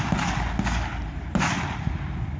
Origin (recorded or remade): recorded